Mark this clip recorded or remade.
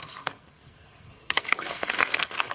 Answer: remade